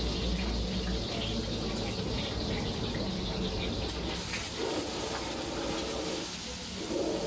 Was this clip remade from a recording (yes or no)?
no